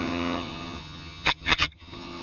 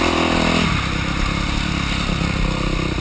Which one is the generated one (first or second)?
first